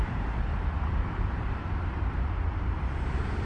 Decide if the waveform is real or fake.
fake